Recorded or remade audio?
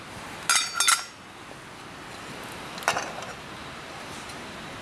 recorded